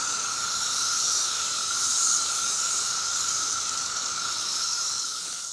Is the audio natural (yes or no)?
no